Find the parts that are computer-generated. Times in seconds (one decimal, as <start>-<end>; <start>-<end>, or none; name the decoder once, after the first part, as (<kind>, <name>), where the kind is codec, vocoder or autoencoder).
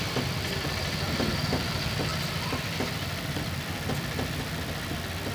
0.0-5.3 (vocoder, BigVGAN v2)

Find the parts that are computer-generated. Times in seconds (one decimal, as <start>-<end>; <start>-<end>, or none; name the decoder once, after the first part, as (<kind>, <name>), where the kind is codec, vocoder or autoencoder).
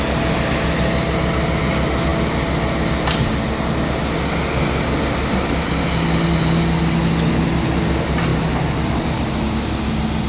8.3-9.2 (vocoder, BigVGAN v2)